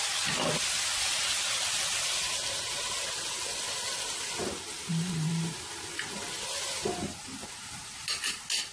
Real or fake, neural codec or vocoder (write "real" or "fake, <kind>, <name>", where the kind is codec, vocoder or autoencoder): real